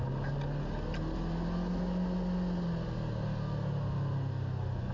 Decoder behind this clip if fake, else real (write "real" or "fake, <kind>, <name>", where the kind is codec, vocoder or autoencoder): real